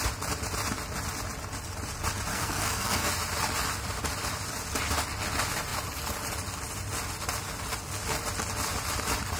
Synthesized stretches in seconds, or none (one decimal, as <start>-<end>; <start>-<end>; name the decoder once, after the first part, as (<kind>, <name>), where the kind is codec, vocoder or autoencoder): 2.3-3.1 (codec, SNAC)